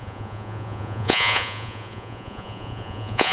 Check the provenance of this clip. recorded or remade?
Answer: remade